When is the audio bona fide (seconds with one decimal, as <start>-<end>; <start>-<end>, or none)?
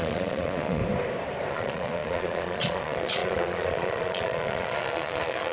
0.8-1.5